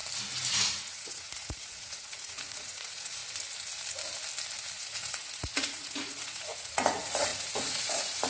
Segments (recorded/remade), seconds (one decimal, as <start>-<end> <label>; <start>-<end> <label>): 0.0-0.5 recorded; 0.5-3.2 remade; 3.2-4.7 recorded; 4.7-8.3 remade

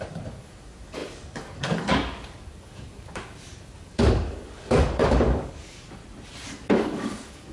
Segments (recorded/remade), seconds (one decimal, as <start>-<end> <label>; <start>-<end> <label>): 0.0-6.0 remade; 6.0-6.6 recorded; 6.6-7.5 remade

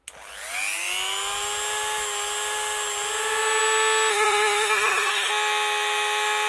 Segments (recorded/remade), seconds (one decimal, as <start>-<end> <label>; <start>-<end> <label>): 0.0-4.1 recorded; 4.1-5.3 remade; 5.3-6.5 recorded